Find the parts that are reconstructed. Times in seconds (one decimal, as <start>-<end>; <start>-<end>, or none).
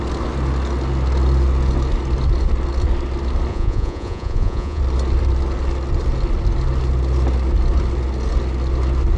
3.5-4.8